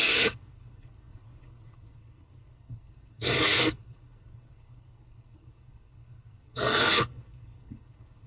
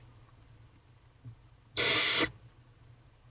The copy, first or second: first